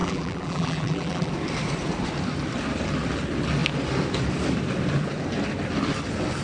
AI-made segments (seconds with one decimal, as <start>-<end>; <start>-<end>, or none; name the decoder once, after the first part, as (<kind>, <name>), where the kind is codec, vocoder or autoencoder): 0.0-1.3 (vocoder, BigVGAN v2)